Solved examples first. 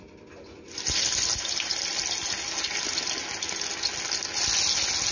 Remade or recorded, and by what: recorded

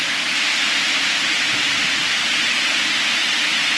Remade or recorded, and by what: recorded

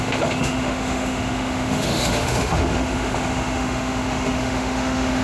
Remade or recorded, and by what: remade, autoencoder, DAC-VAE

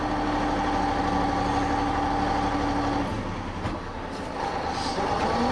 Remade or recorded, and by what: recorded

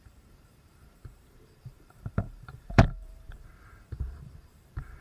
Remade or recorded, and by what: remade, vocoder, BigVGAN v2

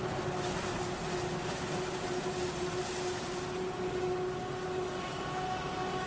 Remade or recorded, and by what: recorded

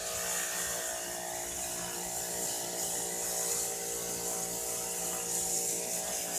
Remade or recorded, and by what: recorded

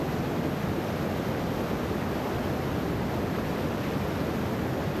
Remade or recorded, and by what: recorded